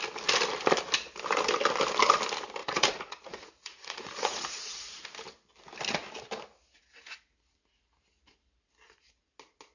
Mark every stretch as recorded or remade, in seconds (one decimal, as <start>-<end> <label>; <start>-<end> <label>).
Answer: 0.0-2.6 recorded; 2.6-5.0 remade; 5.0-9.7 recorded